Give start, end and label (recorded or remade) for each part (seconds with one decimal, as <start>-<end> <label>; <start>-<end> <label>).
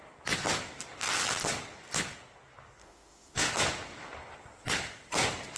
0.0-2.8 recorded; 2.8-3.5 remade; 3.5-5.6 recorded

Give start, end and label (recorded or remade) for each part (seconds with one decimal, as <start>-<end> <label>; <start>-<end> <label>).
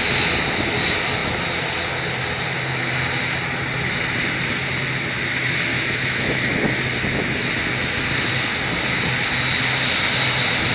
0.0-5.7 recorded; 5.7-6.5 remade; 6.5-10.7 recorded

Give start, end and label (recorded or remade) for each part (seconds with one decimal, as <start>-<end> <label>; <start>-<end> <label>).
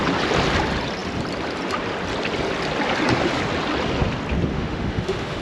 0.0-4.5 recorded; 4.5-5.4 remade